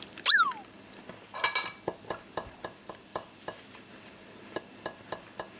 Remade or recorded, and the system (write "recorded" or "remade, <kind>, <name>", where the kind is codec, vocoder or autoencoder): recorded